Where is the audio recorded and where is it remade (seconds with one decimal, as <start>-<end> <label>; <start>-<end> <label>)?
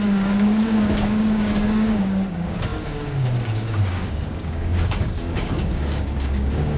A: 0.0-6.8 remade